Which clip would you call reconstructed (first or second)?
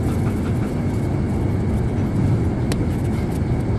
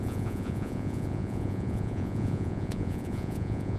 second